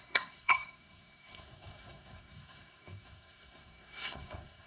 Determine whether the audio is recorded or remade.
remade